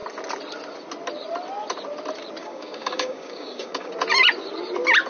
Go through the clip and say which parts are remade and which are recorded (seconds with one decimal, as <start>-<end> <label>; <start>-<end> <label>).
0.0-2.4 recorded; 2.4-3.9 remade; 3.9-5.1 recorded